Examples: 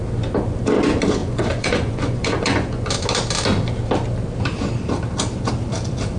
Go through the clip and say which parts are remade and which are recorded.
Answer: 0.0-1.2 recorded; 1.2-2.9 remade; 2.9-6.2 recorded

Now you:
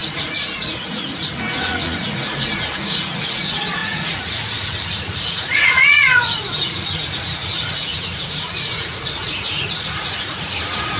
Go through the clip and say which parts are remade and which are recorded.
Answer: 0.0-11.0 remade

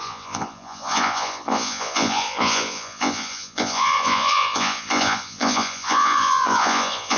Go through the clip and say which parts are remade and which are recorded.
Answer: 0.0-7.2 remade

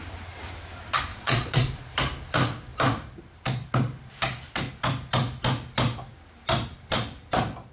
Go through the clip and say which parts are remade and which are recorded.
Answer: 0.0-1.1 recorded; 1.1-1.9 remade; 1.9-7.7 recorded

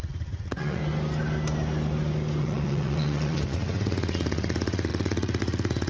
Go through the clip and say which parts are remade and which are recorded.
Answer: 0.0-0.8 remade; 0.8-2.4 recorded; 2.4-5.9 remade

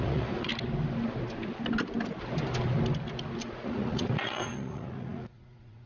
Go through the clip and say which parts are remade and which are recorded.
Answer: 0.0-0.5 remade; 0.5-3.4 recorded; 3.4-5.9 remade

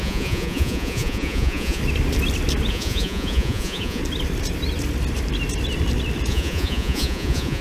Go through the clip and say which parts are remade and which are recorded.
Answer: 0.0-1.8 remade; 1.8-2.7 recorded; 2.7-4.0 remade; 4.0-6.3 recorded; 6.3-7.6 remade